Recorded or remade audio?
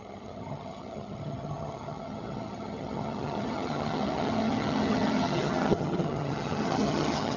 remade